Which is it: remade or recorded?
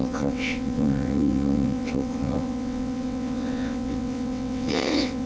remade